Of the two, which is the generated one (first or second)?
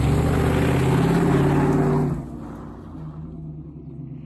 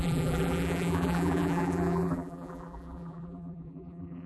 second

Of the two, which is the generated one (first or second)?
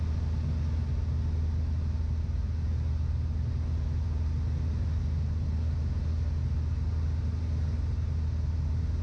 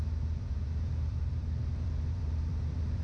second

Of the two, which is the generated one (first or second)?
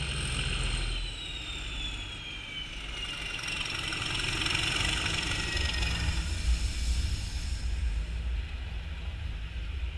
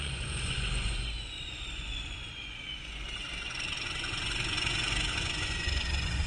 second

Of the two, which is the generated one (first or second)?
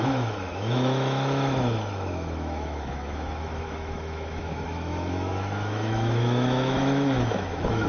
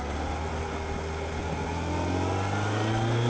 first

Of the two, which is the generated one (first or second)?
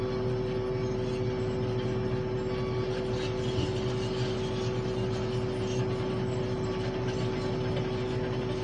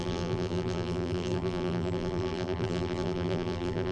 second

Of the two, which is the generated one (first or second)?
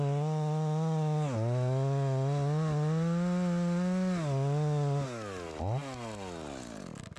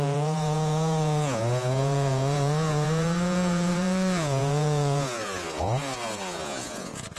second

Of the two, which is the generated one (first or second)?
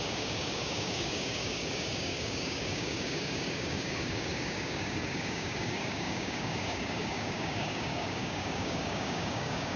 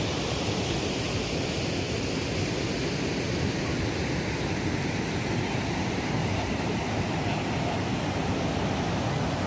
first